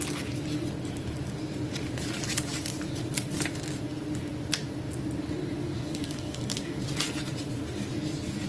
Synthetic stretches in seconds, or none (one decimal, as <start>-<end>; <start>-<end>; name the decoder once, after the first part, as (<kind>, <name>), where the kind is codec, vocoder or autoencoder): 5.6-6.8 (codec, DAC)